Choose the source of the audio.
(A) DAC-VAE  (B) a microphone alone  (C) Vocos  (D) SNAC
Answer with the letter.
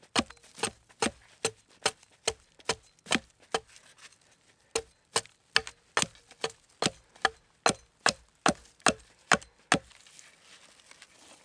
B